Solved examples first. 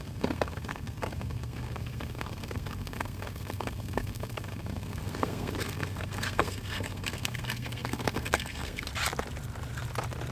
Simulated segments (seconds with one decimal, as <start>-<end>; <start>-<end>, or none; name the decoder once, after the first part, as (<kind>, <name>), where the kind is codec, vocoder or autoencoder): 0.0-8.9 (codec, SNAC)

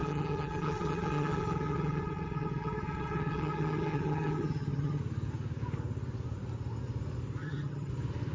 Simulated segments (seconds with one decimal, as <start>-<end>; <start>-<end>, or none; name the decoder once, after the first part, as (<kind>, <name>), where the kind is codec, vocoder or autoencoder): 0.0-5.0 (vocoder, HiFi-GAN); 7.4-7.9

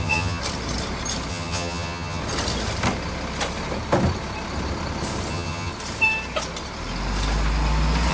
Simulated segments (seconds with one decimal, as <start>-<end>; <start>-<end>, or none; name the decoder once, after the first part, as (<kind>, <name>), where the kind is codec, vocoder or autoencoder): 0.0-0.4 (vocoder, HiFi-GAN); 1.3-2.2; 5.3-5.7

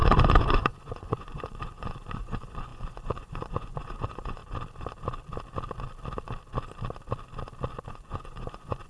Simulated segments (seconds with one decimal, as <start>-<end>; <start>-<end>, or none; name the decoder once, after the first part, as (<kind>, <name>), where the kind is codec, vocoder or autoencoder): 0.0-4.4 (vocoder, Vocos); 7.9-8.9